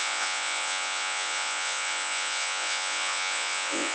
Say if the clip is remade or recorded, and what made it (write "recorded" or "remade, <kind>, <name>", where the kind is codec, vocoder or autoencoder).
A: remade, vocoder, Vocos